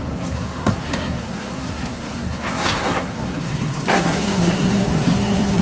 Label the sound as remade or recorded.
remade